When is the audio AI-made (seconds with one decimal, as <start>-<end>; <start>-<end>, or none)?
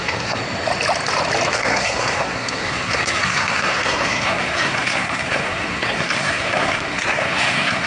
0.0-0.4; 1.5-7.9